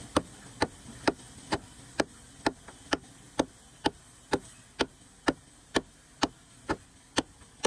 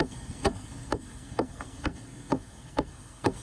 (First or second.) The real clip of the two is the first